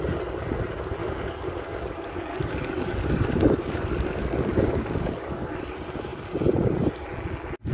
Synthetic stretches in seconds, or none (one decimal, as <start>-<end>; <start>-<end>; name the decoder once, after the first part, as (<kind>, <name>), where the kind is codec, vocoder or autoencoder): 1.0-5.5 (codec, DAC)